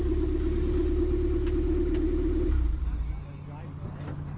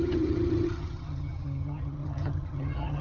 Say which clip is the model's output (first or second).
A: second